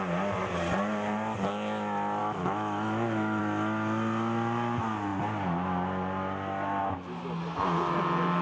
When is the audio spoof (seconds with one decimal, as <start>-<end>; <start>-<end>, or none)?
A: 2.2-3.4